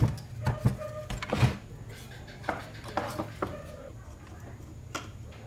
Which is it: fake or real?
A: real